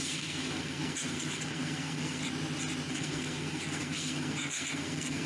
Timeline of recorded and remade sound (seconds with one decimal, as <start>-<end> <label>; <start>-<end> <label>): 0.0-2.2 remade; 2.2-2.9 recorded; 2.9-5.3 remade